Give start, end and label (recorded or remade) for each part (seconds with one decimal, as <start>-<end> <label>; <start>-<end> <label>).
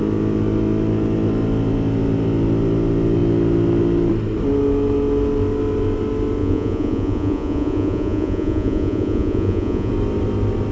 0.0-6.4 recorded; 6.4-9.9 remade; 9.9-10.7 recorded